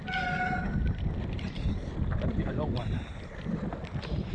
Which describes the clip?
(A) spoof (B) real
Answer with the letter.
B